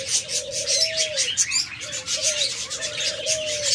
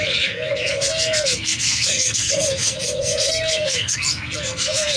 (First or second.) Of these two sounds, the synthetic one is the second